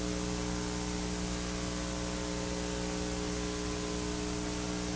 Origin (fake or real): real